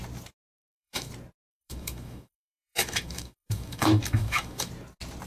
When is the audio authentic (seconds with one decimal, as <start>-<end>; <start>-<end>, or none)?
0.0-0.5; 1.1-1.5; 4.7-5.3